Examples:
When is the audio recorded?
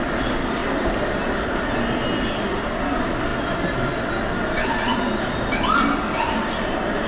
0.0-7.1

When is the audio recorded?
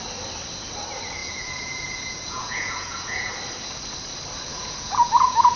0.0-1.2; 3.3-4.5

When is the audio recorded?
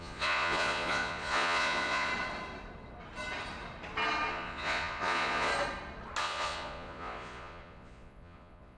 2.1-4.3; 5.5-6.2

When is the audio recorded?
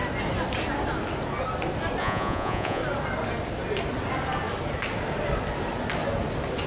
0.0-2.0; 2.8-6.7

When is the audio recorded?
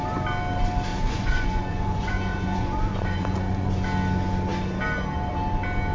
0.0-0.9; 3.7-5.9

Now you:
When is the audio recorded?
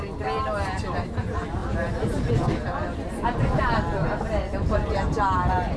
0.0-5.8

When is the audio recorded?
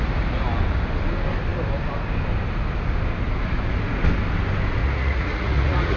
0.0-4.8